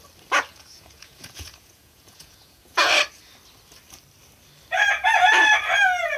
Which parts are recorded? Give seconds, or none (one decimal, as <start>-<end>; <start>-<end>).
0.0-0.5; 2.9-6.2